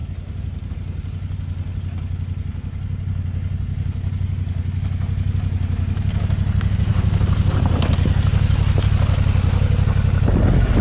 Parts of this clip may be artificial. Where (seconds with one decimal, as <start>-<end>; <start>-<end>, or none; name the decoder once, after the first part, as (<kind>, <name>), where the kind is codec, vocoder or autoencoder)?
6.9-7.7 (vocoder, BigVGAN v2)